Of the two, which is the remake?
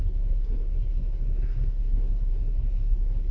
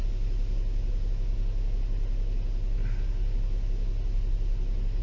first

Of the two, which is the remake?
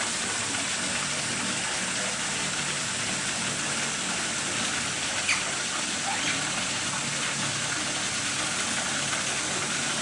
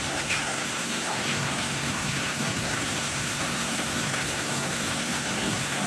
second